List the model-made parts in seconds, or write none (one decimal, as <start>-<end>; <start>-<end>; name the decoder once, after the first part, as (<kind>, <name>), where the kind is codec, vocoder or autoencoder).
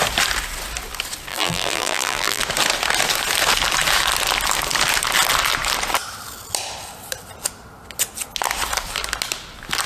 1.3-2.4 (vocoder, BigVGAN v2)